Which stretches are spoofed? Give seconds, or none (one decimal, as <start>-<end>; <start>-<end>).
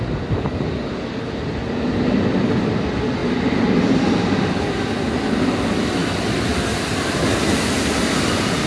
6.0-8.7